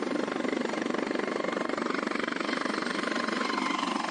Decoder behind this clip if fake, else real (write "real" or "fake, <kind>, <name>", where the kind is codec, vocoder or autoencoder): fake, vocoder, BigVGAN v2